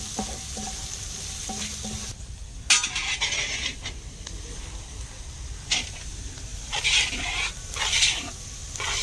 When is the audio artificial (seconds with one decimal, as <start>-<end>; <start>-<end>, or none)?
none